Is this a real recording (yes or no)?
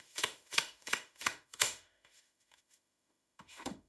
no